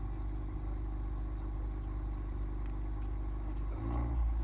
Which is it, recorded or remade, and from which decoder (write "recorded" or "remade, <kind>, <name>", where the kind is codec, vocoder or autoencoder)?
recorded